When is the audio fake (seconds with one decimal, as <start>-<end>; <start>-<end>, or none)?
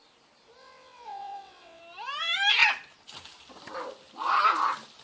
0.6-1.8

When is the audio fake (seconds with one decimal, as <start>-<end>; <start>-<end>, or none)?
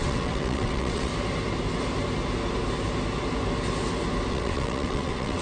0.0-1.1; 4.3-5.4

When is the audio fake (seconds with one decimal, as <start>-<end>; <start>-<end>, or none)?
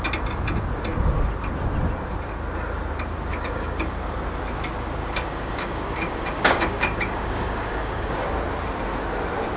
3.3-3.9; 5.0-8.3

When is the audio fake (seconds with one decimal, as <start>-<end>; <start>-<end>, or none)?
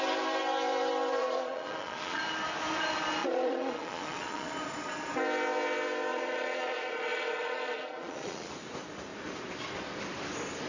1.2-2.2; 3.2-4.5; 6.1-8.5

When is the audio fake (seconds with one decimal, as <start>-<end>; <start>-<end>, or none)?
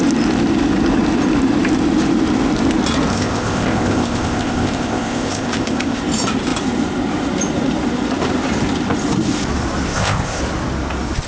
3.1-6.0; 9.9-10.4